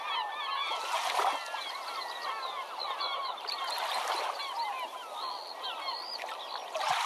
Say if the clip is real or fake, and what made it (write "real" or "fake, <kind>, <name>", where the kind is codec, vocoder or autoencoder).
real